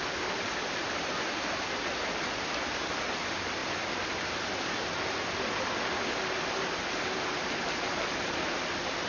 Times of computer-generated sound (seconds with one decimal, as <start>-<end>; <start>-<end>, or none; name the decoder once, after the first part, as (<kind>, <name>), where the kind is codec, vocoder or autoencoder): none